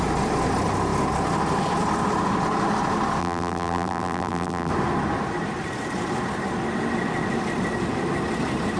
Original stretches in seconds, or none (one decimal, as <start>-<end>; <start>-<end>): 0.0-3.2; 4.7-8.8